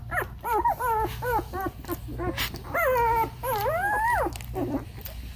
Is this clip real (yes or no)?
yes